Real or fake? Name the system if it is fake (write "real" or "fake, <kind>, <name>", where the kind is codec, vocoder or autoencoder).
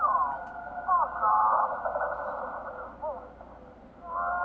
real